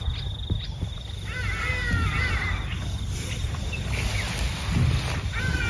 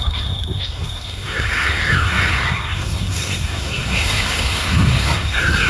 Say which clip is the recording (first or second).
first